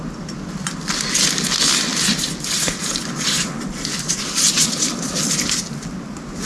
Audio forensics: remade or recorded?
recorded